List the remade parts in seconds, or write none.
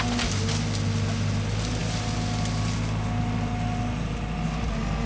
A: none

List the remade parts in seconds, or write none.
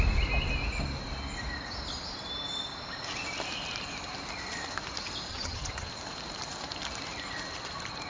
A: 5.3-5.9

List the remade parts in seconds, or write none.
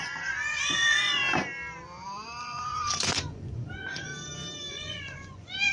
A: 0.0-1.2; 2.4-4.1; 4.7-5.7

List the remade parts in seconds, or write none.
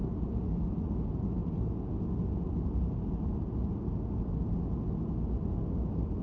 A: none